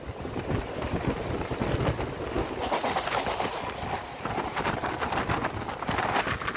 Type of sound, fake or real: real